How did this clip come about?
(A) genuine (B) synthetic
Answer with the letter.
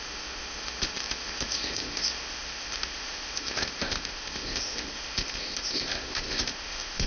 B